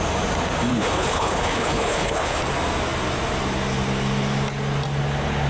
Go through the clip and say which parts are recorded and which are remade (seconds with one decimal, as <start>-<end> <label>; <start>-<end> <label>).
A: 0.0-0.7 recorded; 0.7-2.4 remade; 2.4-5.5 recorded